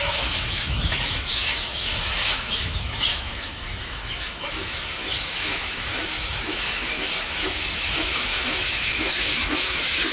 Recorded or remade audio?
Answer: remade